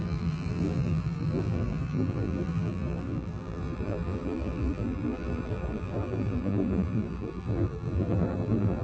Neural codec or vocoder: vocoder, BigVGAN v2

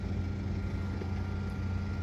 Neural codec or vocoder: none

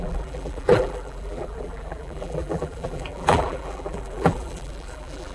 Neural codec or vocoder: vocoder, BigVGAN v2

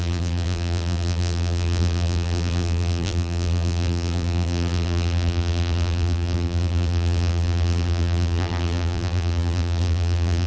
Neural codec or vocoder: vocoder, BigVGAN v2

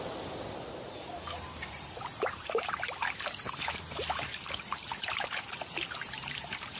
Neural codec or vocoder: vocoder, BigVGAN v2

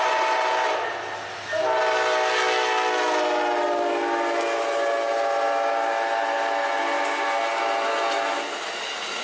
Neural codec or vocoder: none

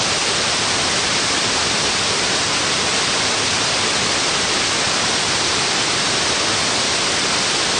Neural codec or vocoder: none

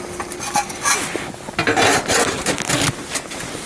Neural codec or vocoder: none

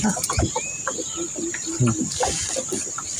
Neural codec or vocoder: none